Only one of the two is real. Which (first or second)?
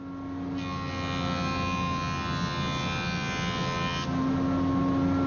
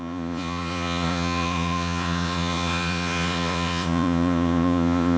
first